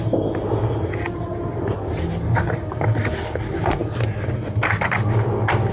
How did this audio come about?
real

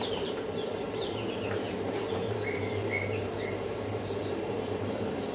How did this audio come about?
fake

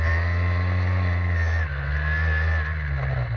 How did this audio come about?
real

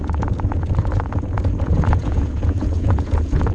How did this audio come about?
fake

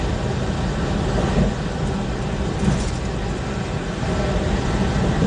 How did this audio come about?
real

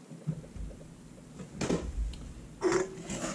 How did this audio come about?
real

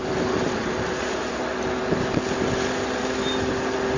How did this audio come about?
real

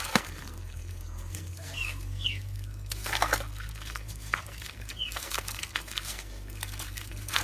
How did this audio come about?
fake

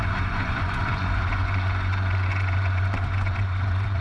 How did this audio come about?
fake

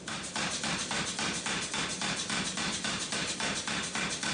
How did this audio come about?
real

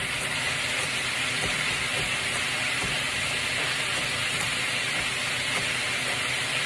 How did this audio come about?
real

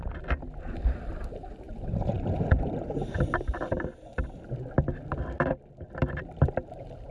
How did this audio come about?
fake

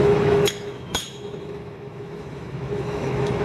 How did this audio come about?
fake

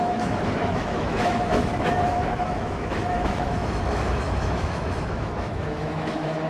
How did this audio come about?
fake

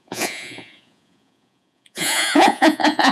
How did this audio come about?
fake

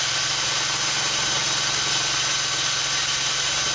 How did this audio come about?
real